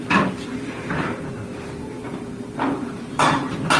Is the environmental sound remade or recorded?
remade